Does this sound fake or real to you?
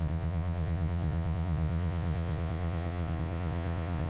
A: fake